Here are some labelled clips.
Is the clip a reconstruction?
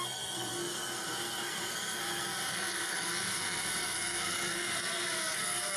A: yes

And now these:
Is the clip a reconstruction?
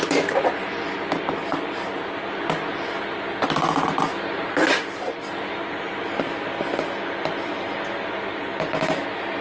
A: no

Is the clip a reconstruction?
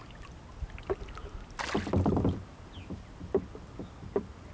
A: no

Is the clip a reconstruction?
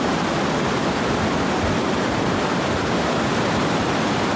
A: no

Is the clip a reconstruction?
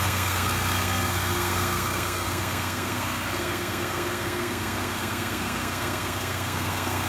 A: yes